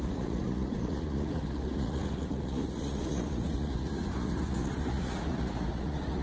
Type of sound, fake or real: fake